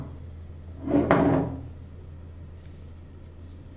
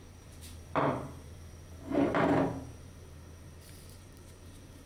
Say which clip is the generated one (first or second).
second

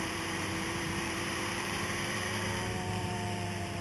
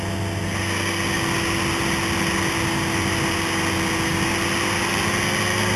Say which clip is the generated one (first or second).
first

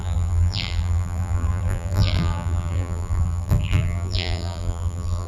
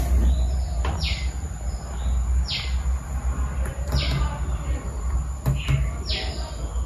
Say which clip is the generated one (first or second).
first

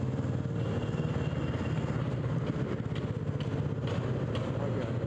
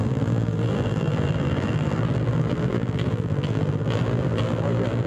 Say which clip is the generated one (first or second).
second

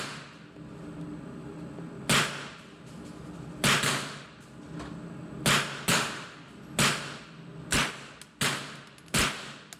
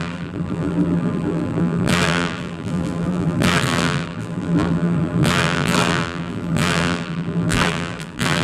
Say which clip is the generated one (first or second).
second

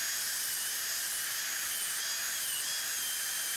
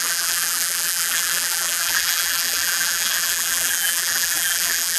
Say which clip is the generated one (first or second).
second